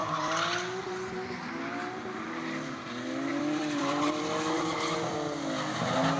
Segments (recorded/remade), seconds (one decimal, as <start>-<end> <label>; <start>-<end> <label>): 0.0-3.3 recorded; 3.3-4.2 remade; 4.2-6.2 recorded